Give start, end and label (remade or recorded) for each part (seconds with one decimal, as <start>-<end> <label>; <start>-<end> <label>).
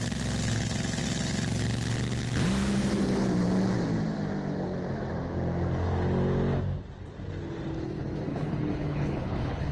0.0-8.3 recorded; 8.3-9.7 remade